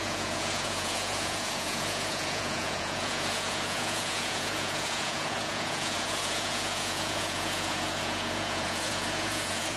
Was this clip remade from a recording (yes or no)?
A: yes